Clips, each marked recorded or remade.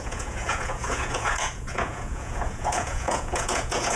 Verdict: remade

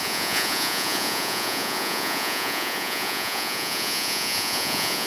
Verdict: remade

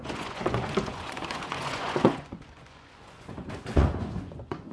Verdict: remade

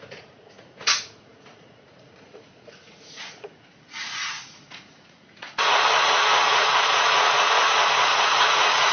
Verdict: remade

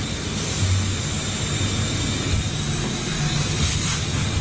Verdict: recorded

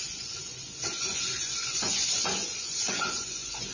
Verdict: remade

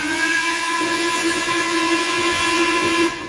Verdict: remade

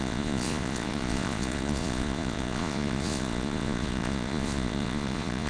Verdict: remade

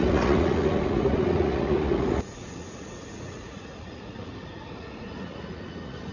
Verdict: remade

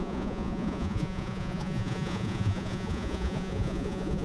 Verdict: remade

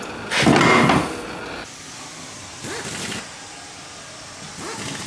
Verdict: recorded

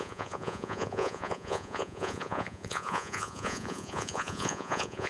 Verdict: remade